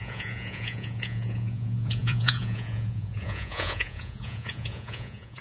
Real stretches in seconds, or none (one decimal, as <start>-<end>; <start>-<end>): none